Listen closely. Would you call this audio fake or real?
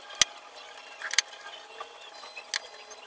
real